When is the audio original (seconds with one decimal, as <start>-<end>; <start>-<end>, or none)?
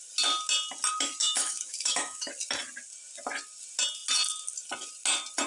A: 0.0-1.2; 2.3-5.5